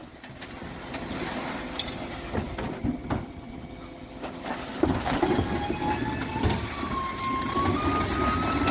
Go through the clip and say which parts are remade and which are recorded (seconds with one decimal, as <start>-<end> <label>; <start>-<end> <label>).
0.0-4.7 recorded; 4.7-6.9 remade; 6.9-8.7 recorded